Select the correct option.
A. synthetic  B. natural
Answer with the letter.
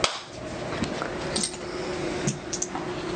B